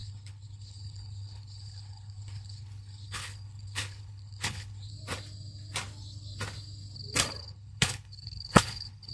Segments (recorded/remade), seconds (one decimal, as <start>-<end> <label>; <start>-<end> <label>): 0.0-4.9 remade; 4.9-7.4 recorded; 7.4-9.1 remade